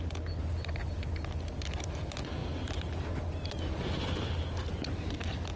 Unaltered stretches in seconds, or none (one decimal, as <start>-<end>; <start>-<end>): 0.0-5.6